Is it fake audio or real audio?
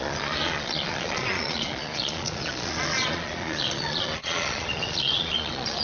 fake